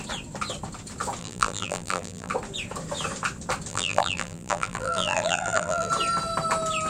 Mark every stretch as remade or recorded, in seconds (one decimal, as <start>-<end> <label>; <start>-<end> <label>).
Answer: 0.0-1.2 recorded; 1.2-2.3 remade; 2.3-3.7 recorded; 3.7-5.9 remade; 5.9-6.9 recorded

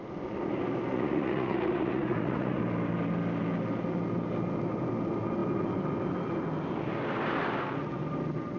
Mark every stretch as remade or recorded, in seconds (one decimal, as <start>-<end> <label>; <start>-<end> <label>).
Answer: 0.0-0.9 recorded; 0.9-2.6 remade; 2.6-8.6 recorded

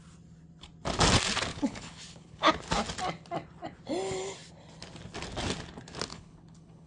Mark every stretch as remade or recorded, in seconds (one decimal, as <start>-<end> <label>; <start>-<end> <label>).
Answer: 0.0-1.5 recorded; 1.5-2.5 remade; 2.5-6.1 recorded; 6.1-6.9 remade